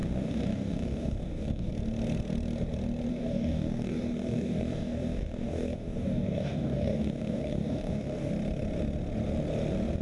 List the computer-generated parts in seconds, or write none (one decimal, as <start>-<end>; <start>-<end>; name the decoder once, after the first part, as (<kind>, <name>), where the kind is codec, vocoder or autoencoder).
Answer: 0.0-1.7 (codec, DAC); 3.1-8.3